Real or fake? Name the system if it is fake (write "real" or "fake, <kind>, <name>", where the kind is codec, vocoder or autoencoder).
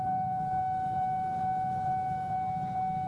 fake, vocoder, Vocos